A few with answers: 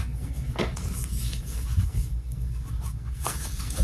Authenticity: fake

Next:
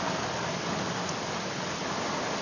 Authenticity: real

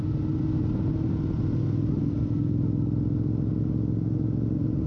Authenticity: real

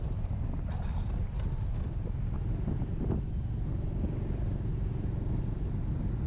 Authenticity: real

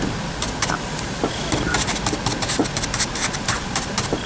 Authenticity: real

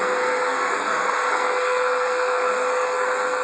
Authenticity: fake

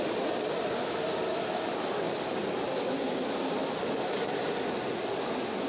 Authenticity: real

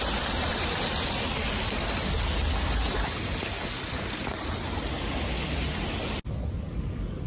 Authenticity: real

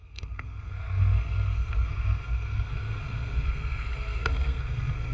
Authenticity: fake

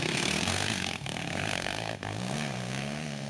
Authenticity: fake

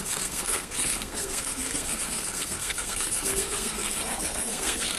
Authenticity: fake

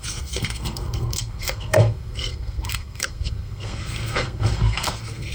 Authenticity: fake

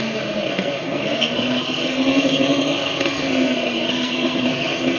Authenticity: fake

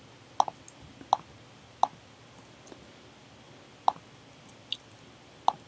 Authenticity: real